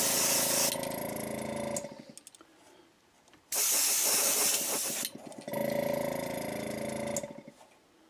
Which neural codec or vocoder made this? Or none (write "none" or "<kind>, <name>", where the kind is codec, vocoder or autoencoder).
none